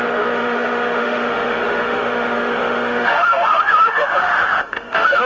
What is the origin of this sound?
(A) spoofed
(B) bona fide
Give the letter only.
A